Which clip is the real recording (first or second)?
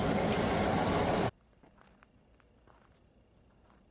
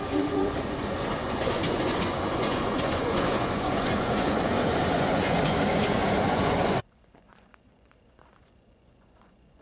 first